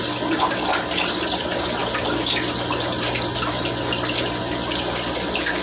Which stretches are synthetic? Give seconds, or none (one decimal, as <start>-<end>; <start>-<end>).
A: none